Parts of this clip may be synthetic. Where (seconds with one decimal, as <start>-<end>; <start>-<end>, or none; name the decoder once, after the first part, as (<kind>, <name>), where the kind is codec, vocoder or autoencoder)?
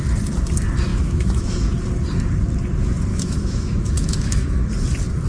0.9-1.5 (autoencoder, DAC-VAE); 3.1-4.7